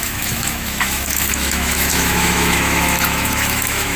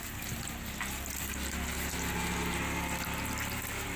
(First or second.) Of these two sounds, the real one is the second